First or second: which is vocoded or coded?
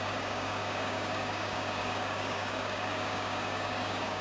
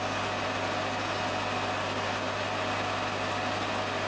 first